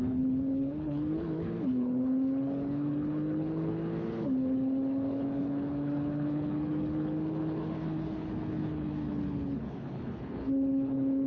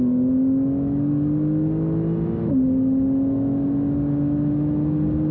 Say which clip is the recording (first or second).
second